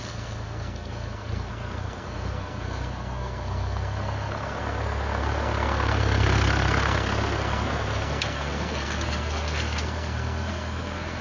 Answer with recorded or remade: remade